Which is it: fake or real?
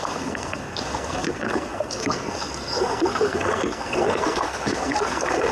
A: fake